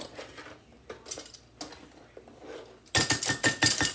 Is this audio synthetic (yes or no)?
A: no